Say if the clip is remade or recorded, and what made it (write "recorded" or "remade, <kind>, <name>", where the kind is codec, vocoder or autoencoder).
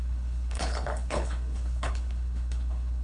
remade, codec, HILCodec